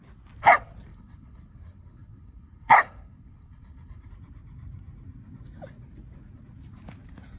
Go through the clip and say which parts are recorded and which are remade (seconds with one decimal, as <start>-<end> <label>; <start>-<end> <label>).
0.0-0.9 recorded; 0.9-4.1 remade; 4.1-7.4 recorded